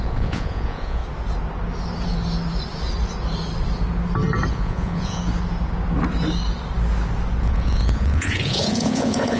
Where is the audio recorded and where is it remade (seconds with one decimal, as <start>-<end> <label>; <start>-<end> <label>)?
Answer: 0.0-1.0 remade; 1.0-4.5 recorded; 4.5-5.2 remade; 5.2-7.4 recorded; 7.4-9.4 remade